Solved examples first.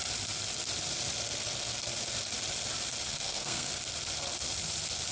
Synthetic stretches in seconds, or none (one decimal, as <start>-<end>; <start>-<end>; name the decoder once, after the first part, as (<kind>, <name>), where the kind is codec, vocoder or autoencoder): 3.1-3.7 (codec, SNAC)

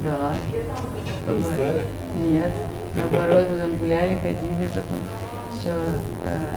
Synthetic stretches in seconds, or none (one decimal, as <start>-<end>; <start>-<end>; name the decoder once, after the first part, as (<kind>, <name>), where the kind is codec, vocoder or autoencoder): 0.0-0.5 (vocoder, BigVGAN v2); 1.2-6.6

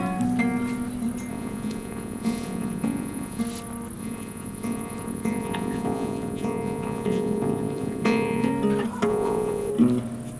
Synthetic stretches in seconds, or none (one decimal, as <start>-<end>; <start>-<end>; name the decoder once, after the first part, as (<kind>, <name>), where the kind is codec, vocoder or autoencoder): 1.3-3.4 (vocoder, Vocos); 4.0-8.5; 9.1-9.7

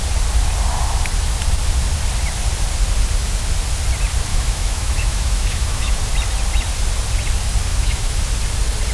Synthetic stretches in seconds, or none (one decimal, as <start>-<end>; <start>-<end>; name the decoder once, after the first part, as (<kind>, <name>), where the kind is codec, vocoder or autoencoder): 4.3-6.0 (autoencoder, DAC-VAE); 7.7-8.2